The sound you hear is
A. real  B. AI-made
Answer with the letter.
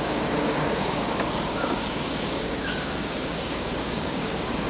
B